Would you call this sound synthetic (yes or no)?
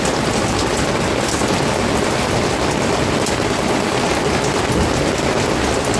no